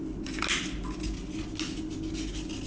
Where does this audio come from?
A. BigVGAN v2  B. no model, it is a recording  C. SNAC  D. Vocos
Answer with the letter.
B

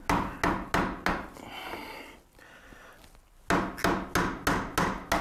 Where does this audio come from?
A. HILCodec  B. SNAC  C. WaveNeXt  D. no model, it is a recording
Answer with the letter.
D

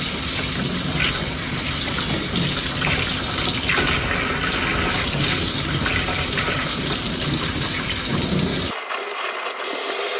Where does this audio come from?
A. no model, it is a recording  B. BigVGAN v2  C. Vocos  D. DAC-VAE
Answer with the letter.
A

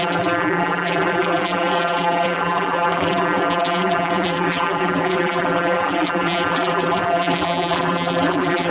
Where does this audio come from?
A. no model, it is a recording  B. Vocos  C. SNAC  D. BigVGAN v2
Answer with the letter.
D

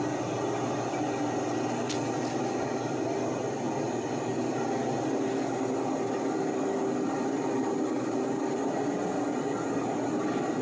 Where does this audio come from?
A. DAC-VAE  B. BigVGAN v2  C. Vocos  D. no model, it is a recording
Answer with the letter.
D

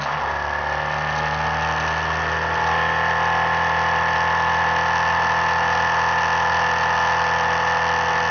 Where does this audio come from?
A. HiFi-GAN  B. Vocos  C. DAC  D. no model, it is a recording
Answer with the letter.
D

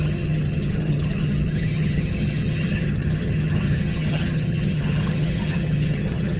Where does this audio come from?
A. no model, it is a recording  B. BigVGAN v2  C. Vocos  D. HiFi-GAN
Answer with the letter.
D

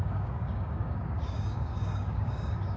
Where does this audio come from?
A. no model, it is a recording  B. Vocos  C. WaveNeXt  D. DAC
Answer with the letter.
D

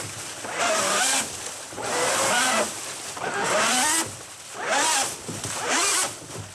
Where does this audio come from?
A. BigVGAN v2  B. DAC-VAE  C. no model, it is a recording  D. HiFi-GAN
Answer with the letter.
C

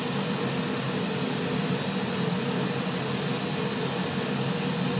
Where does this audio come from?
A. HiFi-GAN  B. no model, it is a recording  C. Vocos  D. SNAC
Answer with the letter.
B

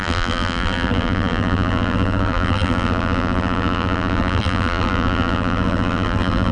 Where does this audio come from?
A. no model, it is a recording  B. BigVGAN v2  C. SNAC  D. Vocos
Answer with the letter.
B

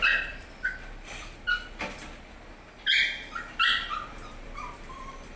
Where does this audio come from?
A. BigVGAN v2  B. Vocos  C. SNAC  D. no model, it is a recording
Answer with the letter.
A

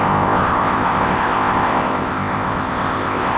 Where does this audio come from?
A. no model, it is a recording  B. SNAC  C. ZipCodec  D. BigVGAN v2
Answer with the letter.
C